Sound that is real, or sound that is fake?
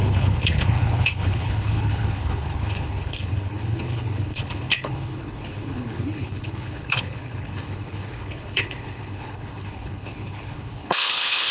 fake